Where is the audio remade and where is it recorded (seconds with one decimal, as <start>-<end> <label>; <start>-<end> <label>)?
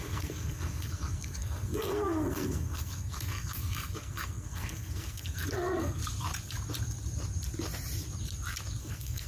0.0-6.0 remade; 6.0-8.8 recorded; 8.8-9.3 remade